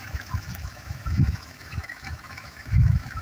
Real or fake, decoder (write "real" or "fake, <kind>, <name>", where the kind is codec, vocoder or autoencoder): fake, autoencoder, DAC-VAE